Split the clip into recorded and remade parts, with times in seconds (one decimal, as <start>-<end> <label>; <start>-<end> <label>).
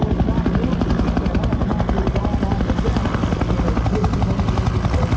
0.0-5.2 recorded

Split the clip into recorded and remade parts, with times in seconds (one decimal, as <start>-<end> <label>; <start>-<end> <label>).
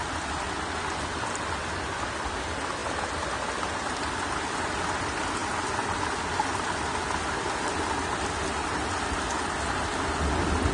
0.0-10.7 recorded